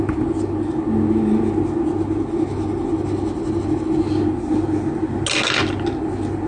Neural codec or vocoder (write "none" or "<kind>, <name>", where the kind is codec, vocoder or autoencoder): none